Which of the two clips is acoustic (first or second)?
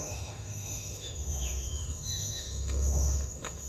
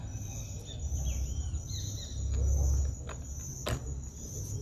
second